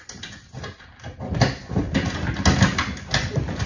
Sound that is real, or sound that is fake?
real